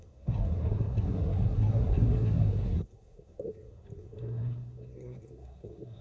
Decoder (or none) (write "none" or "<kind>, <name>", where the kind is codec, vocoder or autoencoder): codec, SNAC